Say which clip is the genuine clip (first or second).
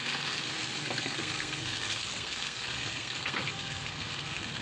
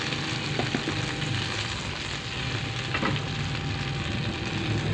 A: second